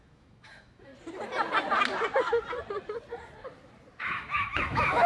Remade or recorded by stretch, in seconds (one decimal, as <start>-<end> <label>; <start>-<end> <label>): 0.0-0.9 remade; 0.9-4.0 recorded; 4.0-5.1 remade